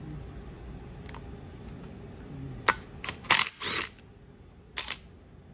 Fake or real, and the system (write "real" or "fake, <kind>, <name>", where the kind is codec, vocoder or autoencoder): real